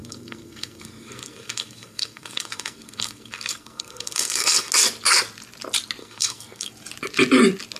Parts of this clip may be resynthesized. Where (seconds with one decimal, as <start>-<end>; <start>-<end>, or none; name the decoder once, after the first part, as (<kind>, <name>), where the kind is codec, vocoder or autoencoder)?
0.0-4.7 (codec, SNAC); 6.0-6.7